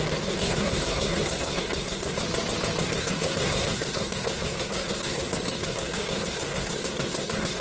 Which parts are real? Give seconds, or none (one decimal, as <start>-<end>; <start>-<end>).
2.2-2.8